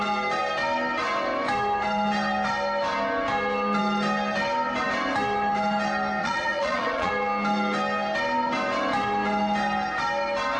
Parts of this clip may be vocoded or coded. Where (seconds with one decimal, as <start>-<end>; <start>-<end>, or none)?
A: 6.2-7.1